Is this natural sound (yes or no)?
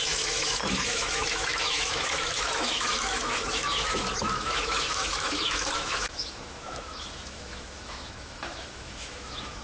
no